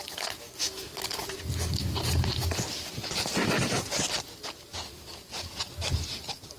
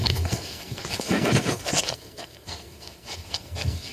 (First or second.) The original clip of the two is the first